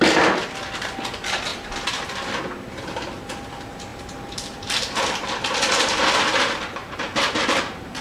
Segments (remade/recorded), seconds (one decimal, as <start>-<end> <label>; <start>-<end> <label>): 0.0-6.8 recorded; 6.8-7.6 remade; 7.6-8.0 recorded